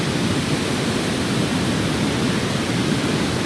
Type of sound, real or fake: real